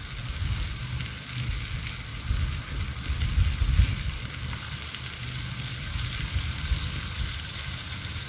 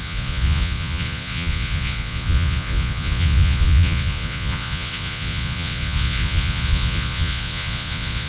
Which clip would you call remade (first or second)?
second